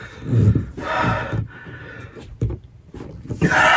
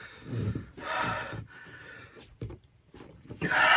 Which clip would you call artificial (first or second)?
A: second